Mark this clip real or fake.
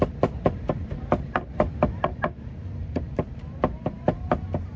fake